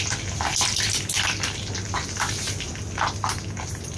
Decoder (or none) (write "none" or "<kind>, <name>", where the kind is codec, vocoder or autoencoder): none